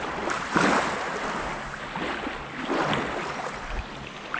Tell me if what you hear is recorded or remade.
recorded